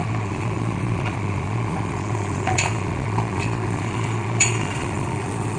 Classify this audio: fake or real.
fake